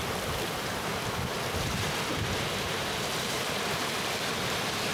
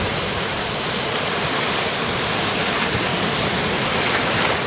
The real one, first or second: second